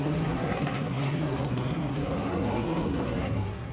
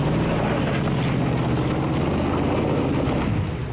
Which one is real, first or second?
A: second